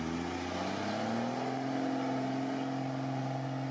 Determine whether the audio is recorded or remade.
recorded